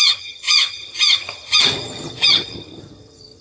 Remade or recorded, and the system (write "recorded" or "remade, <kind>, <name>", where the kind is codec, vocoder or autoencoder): remade, vocoder, HiFi-GAN